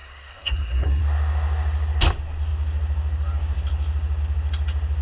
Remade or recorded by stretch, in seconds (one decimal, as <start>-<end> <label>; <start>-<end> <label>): 0.0-1.0 remade; 1.0-5.0 recorded